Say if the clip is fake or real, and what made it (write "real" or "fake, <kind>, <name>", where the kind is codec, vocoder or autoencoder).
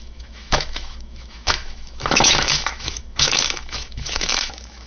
fake, autoencoder, DAC-VAE